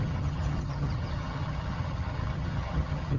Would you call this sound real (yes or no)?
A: no